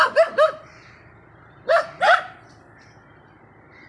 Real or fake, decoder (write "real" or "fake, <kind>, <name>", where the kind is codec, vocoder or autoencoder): real